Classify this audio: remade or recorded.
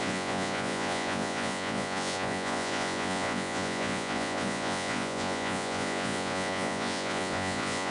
remade